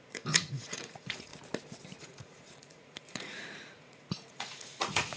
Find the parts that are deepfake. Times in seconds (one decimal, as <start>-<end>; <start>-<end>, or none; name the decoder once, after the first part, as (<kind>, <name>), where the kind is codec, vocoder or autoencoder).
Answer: 0.0-1.3 (vocoder, Vocos); 2.0-5.2